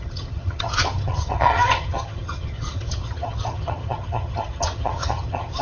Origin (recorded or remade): remade